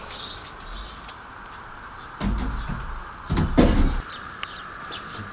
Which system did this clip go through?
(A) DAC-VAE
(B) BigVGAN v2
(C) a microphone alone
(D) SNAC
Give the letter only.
C